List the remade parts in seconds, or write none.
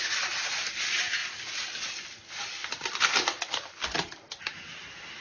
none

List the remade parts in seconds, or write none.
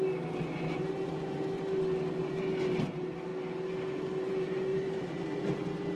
4.7-5.4 (vocoder, BigVGAN v2)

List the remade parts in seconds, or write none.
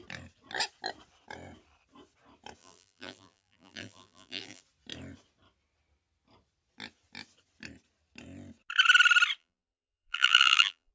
2.6-4.6 (vocoder, BigVGAN v2); 9.4-10.9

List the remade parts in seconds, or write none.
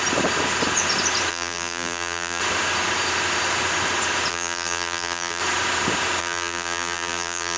1.3-2.4 (vocoder, BigVGAN v2); 4.3-5.4; 6.2-7.6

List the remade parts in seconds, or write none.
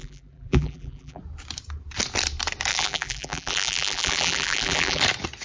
0.0-1.2 (vocoder, BigVGAN v2); 2.7-5.0